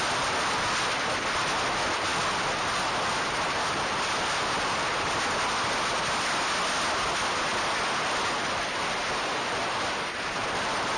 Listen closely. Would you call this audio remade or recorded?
recorded